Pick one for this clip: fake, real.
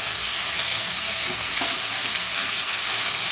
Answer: fake